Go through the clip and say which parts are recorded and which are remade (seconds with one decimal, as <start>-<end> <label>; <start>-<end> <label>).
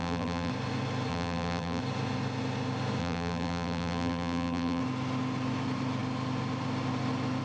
0.0-0.5 remade; 0.5-1.1 recorded; 1.1-1.8 remade; 1.8-3.0 recorded; 3.0-4.8 remade; 4.8-7.4 recorded